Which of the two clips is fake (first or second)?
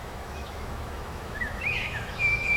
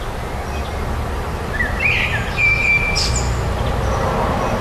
first